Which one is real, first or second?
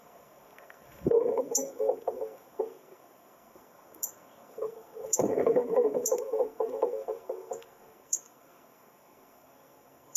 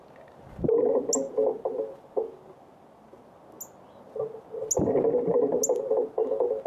second